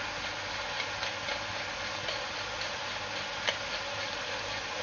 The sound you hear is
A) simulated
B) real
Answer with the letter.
B